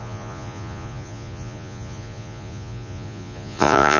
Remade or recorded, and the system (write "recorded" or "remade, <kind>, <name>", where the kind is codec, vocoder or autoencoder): remade, vocoder, Vocos